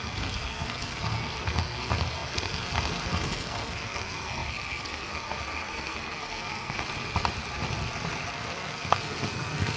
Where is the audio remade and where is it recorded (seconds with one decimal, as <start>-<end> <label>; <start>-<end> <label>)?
0.0-6.8 remade; 6.8-8.3 recorded; 8.3-9.8 remade